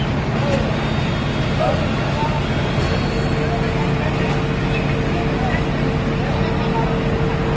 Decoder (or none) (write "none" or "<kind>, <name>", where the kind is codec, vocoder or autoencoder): none